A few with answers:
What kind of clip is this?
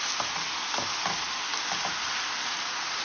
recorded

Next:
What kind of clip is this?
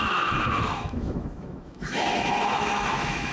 remade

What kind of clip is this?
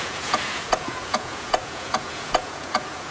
remade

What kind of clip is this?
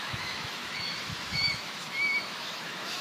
remade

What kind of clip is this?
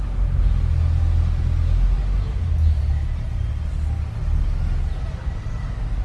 recorded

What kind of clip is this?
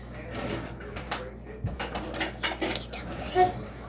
recorded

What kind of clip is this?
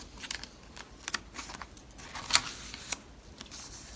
recorded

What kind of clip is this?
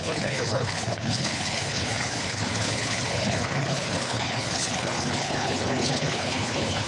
remade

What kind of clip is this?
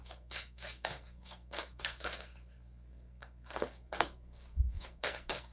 remade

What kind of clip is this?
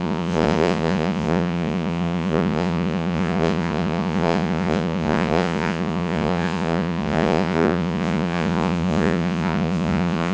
remade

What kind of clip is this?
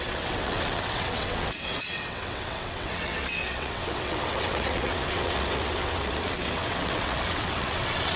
remade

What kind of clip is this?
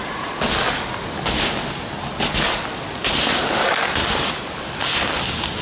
recorded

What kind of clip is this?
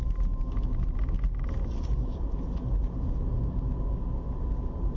recorded